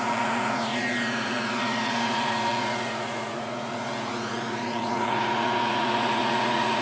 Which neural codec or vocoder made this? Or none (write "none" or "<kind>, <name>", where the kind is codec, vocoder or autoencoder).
vocoder, Vocos